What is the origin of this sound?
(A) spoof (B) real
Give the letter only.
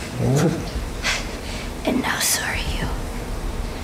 A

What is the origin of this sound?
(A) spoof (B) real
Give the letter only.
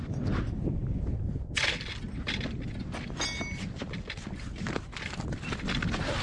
B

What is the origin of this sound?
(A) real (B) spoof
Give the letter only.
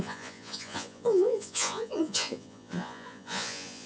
B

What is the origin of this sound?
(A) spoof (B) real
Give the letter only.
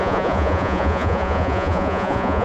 A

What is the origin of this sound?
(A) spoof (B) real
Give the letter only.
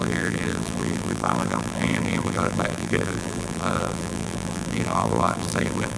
A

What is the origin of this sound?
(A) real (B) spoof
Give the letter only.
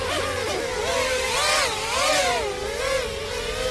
A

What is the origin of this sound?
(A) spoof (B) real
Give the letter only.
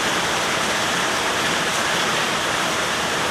B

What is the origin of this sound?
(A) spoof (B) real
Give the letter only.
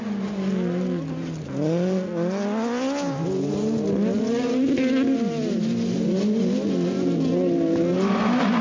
B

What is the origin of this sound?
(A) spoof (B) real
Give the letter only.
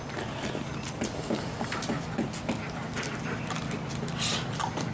B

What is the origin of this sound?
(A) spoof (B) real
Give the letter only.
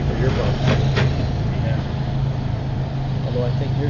B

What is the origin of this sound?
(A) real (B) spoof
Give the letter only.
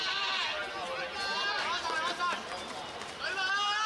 A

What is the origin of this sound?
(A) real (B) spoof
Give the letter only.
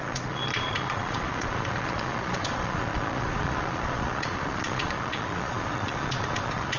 B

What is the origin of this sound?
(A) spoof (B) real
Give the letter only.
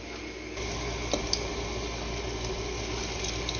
B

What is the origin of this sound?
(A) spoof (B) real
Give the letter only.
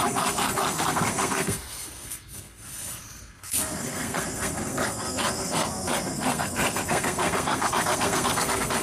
A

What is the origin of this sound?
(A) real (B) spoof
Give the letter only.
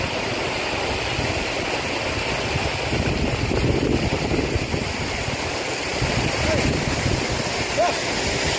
A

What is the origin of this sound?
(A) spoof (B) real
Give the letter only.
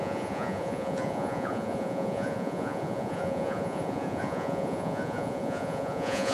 A